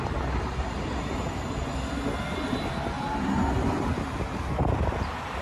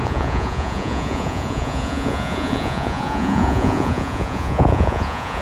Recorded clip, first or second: first